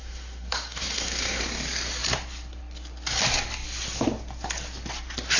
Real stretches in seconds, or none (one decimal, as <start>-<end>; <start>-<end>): 1.4-5.4